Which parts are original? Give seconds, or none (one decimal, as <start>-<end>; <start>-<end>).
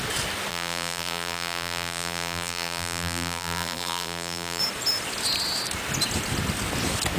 0.0-0.5; 4.6-7.2